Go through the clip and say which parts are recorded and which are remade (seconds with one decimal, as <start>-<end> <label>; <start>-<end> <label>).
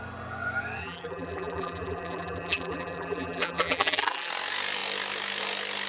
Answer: 0.0-0.8 recorded; 0.8-4.3 remade; 4.3-5.9 recorded